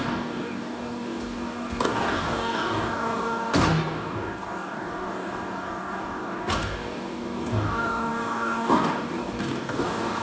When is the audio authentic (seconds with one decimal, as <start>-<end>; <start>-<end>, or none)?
none